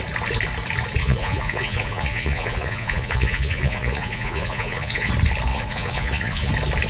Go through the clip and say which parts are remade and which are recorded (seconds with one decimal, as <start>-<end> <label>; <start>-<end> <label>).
0.0-1.0 recorded; 1.0-5.1 remade; 5.1-5.5 recorded; 5.5-6.5 remade; 6.5-6.9 recorded

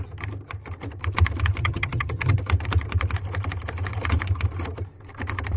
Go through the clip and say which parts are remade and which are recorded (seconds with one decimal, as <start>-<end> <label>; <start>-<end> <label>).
0.0-1.6 recorded; 1.6-2.4 remade; 2.4-5.6 recorded